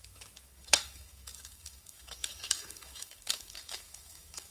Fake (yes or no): yes